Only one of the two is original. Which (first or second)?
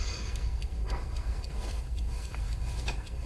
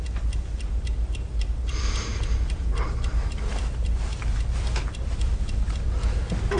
second